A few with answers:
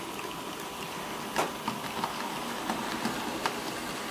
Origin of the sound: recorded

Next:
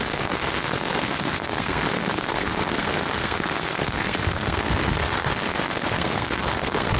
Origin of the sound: remade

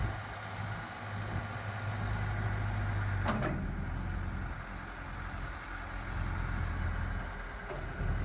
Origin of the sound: recorded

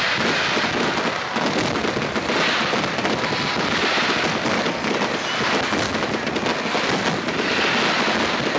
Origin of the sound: recorded